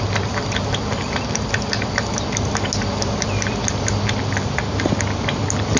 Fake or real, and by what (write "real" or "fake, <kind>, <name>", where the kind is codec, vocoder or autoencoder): real